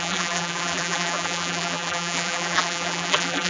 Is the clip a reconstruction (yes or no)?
yes